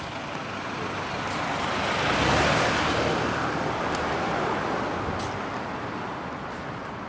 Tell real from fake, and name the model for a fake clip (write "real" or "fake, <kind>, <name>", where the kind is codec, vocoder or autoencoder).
real